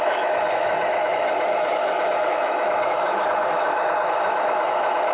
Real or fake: fake